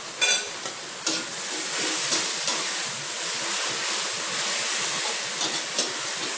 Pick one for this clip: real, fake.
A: real